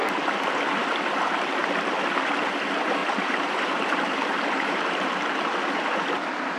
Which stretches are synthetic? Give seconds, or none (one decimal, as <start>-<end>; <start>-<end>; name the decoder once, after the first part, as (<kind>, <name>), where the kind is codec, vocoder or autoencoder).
3.0-5.3 (vocoder, BigVGAN v2)